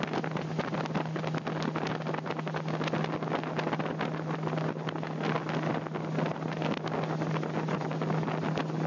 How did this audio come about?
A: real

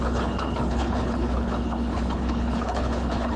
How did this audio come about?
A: fake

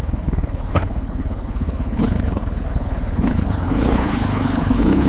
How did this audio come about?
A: fake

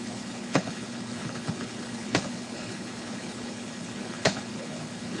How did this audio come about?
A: fake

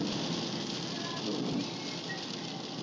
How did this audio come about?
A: real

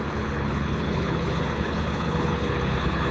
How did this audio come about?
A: fake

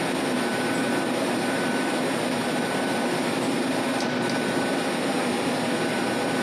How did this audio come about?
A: real